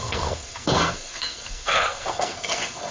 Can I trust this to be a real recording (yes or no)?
no